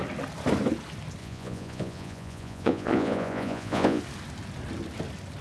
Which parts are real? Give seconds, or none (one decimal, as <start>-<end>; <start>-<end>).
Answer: 0.0-1.2; 4.0-5.4